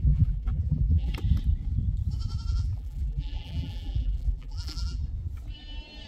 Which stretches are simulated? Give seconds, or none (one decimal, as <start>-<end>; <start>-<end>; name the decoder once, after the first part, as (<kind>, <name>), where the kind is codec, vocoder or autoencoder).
0.0-1.1 (vocoder, BigVGAN v2); 2.5-5.0